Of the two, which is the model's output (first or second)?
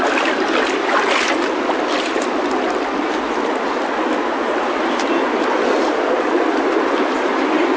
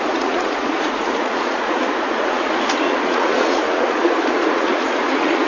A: second